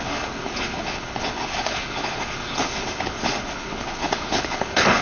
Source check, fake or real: fake